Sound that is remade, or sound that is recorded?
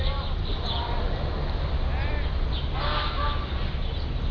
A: recorded